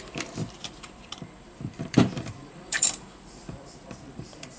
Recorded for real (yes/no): no